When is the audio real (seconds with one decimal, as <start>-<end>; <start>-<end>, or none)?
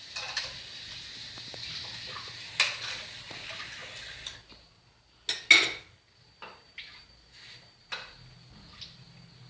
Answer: 0.0-9.5